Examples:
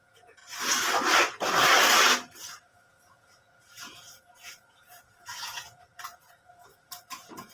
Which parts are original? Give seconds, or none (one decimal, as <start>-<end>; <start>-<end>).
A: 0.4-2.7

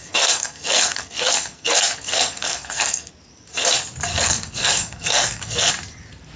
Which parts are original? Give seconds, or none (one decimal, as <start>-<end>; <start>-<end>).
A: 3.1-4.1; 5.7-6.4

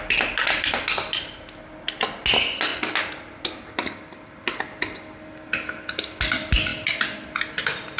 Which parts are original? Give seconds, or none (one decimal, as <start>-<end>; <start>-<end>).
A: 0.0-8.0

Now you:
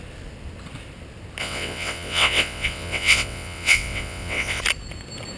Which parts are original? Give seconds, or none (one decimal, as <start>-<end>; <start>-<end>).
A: 0.0-1.4; 4.6-5.4